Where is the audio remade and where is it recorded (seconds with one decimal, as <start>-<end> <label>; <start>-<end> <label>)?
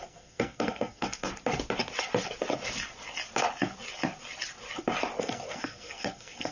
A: 0.0-1.3 remade; 1.3-5.2 recorded; 5.2-6.5 remade